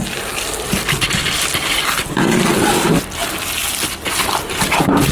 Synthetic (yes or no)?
no